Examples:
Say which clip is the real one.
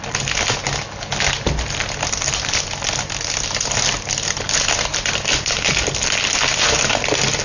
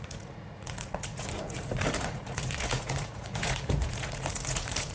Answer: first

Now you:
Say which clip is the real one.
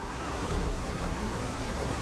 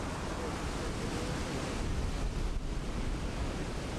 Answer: second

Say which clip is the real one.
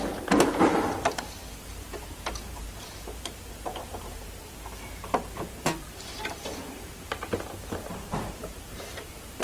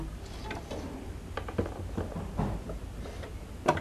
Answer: second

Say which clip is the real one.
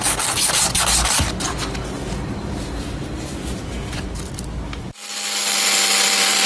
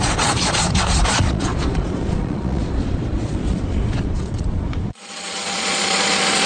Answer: first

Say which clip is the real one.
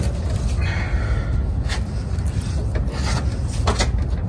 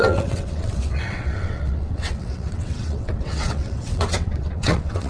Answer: first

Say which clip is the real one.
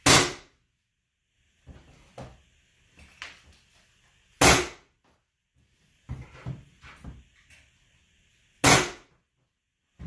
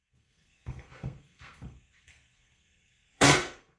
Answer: first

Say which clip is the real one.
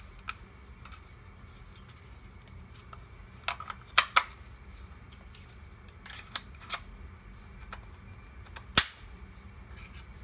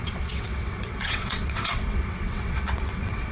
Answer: first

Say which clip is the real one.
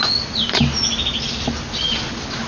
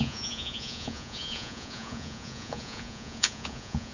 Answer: first